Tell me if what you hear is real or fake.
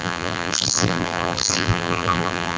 fake